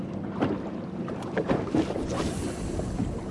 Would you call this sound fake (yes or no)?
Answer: yes